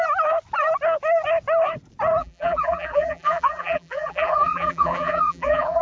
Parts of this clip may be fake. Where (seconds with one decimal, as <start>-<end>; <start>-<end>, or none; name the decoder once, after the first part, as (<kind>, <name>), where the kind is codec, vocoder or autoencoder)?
2.2-5.8 (vocoder, BigVGAN v2)